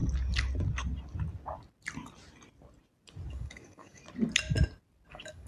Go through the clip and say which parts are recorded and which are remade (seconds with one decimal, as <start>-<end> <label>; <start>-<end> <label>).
0.0-3.3 recorded; 3.3-4.0 remade; 4.0-5.1 recorded; 5.1-5.5 remade